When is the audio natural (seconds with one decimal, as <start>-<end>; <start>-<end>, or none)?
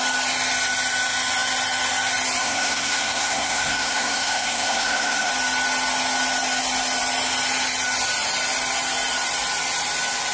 0.0-2.4; 5.3-10.3